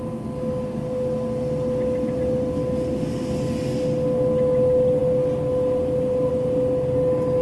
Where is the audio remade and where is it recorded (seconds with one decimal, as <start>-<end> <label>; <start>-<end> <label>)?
0.0-7.4 recorded